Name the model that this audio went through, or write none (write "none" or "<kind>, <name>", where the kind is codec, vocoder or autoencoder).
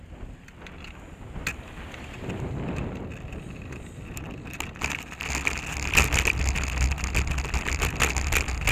none